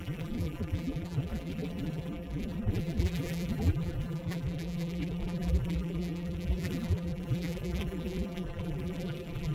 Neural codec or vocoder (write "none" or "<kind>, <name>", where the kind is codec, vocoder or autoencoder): vocoder, BigVGAN v2